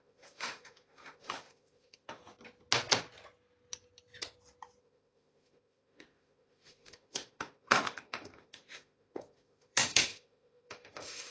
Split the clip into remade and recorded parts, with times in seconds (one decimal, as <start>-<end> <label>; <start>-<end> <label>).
0.0-2.2 remade; 2.2-4.8 recorded; 4.8-11.3 remade